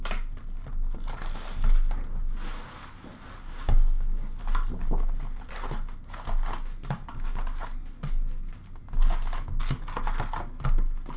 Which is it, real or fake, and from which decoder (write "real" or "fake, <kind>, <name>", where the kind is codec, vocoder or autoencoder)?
real